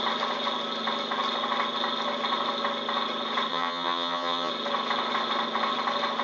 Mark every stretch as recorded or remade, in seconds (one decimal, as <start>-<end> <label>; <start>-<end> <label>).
0.0-3.5 recorded; 3.5-4.5 remade; 4.5-6.2 recorded